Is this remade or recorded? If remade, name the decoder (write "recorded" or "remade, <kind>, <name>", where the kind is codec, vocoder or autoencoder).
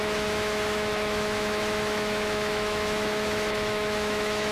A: remade, autoencoder, DAC-VAE